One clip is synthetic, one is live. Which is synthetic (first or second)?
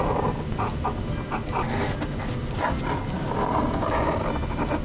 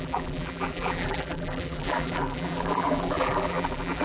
second